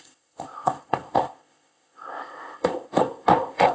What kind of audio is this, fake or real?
fake